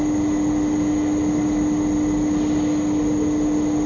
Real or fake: real